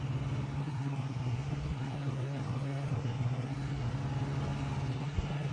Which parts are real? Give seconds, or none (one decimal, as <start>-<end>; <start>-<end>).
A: 0.0-0.6; 3.9-4.9